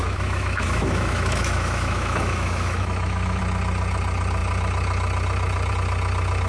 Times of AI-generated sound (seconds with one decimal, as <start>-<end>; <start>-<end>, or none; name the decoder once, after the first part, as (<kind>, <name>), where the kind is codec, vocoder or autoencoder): 0.0-3.4 (autoencoder, DAC-VAE)